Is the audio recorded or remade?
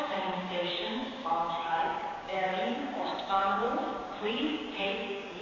remade